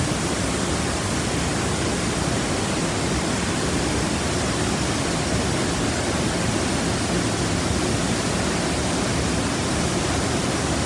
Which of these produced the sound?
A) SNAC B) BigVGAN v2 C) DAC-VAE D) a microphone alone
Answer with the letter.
D